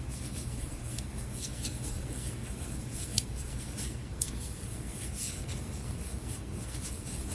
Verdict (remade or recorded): remade